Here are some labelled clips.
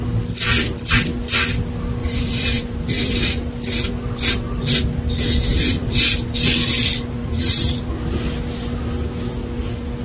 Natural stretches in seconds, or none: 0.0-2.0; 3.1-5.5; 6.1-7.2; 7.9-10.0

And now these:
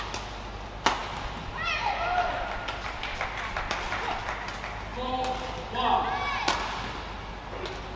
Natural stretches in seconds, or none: 0.0-1.0; 4.5-8.0